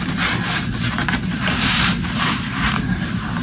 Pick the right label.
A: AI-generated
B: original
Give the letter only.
A